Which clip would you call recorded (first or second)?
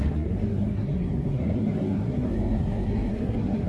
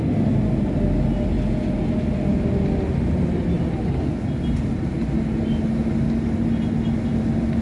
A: second